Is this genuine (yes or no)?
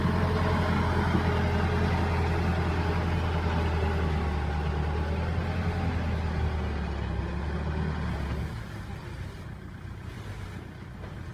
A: yes